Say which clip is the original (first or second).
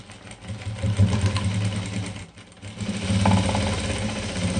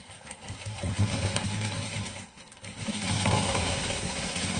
first